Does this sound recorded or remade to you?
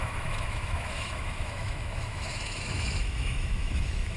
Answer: remade